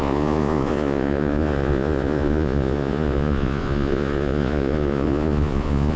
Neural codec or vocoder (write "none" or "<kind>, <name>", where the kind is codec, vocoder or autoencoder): vocoder, Vocos